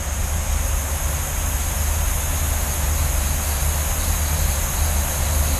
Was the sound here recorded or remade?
recorded